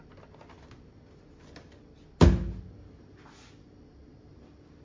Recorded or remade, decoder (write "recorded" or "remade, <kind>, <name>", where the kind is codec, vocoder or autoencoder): recorded